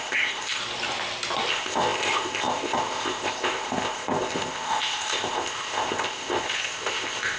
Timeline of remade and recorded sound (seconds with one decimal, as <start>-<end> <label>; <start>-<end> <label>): 0.0-0.6 remade; 0.6-1.5 recorded; 1.5-7.4 remade